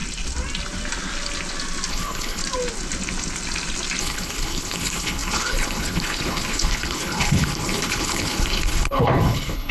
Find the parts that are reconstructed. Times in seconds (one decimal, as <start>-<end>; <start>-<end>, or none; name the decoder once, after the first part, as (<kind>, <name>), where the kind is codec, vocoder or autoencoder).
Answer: 1.9-2.4 (codec, HILCodec); 4.0-9.7